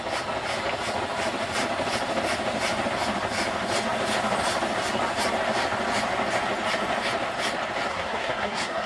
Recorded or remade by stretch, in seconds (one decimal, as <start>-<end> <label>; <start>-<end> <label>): 0.0-7.9 recorded; 7.9-8.9 remade